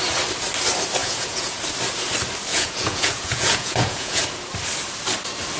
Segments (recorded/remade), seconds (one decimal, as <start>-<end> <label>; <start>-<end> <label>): 0.0-1.0 recorded; 1.0-1.6 remade; 1.6-2.5 recorded; 2.5-4.2 remade; 4.2-5.6 recorded